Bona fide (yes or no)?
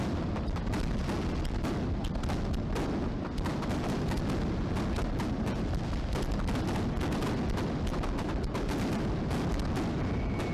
yes